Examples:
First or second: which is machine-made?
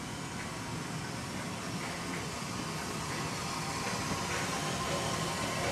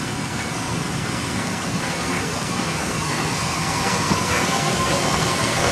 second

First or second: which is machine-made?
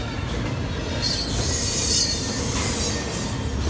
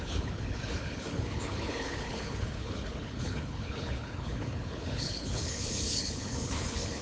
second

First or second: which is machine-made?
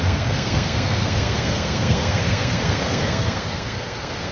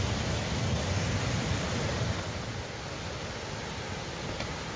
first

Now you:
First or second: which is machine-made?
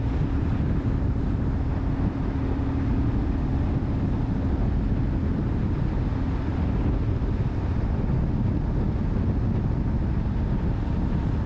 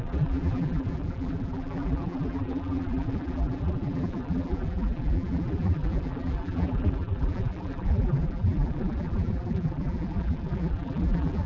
second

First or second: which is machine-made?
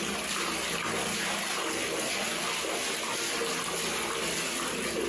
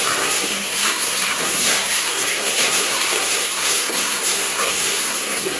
second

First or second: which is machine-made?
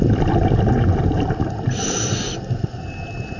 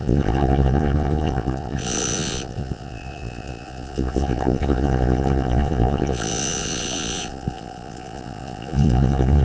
second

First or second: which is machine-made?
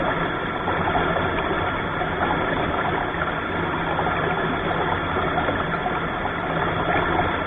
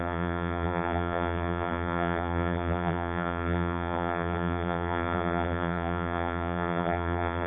second